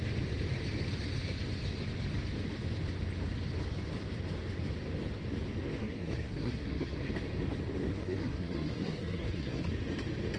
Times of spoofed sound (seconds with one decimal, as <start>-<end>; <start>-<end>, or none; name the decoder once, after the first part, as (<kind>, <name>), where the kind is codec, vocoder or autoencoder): 5.8-7.1 (codec, SNAC); 7.9-9.7